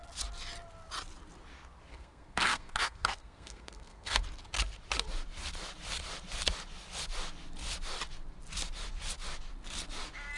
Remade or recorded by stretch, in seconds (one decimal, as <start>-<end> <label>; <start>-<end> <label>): 0.0-1.9 recorded; 1.9-4.2 remade; 4.2-10.4 recorded